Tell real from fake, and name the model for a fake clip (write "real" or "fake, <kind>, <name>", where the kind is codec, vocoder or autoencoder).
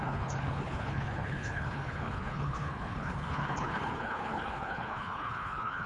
fake, codec, HILCodec